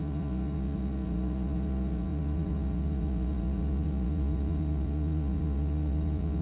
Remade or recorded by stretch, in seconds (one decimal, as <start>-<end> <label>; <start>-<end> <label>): 0.0-6.4 remade